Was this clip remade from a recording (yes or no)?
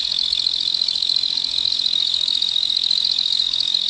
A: yes